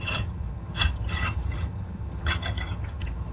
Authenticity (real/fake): fake